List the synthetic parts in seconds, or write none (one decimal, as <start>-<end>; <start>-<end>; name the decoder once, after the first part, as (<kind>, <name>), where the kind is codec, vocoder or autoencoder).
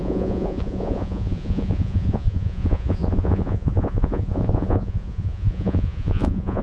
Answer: 0.0-6.6 (vocoder, Vocos)